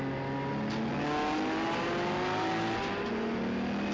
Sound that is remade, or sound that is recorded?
recorded